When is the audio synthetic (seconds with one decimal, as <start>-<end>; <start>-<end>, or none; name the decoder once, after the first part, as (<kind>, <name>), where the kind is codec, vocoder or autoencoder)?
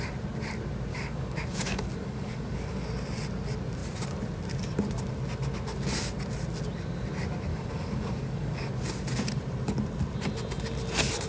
0.9-2.7 (codec, DAC); 7.5-8.7